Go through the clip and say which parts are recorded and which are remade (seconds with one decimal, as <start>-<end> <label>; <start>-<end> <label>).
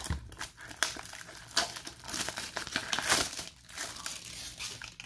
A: 0.0-5.1 recorded